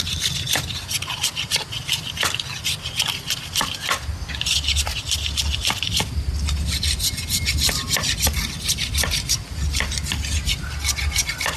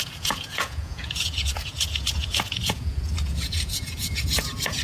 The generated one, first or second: second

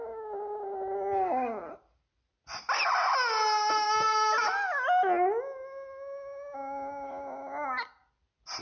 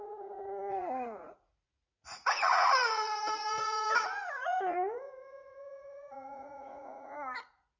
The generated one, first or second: second